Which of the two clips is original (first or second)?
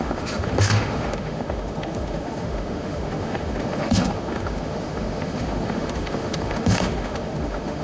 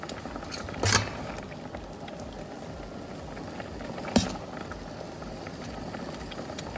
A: second